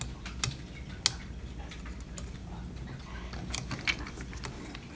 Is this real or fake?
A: real